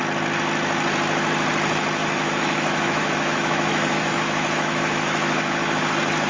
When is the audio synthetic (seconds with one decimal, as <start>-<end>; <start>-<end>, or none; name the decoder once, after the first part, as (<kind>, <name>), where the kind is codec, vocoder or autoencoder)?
2.0-5.8 (autoencoder, DAC-VAE)